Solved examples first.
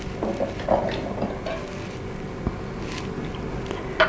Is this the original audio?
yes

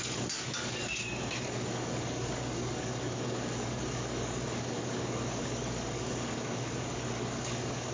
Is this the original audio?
no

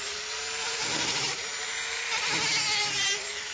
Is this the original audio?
yes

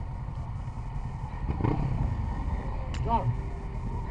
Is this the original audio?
yes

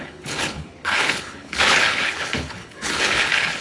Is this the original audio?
no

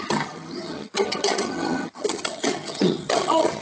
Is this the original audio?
no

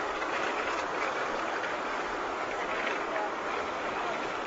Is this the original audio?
no